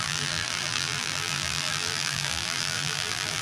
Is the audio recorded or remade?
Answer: remade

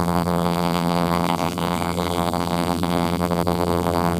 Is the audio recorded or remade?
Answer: remade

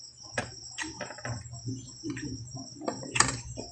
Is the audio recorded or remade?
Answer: remade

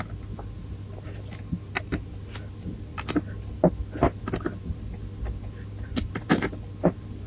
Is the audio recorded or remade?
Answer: recorded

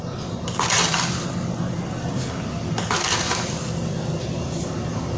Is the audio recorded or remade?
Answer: recorded